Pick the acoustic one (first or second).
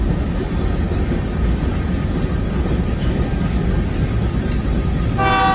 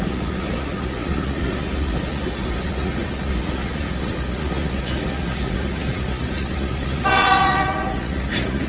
first